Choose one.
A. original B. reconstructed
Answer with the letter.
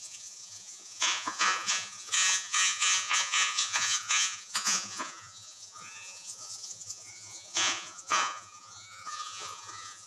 B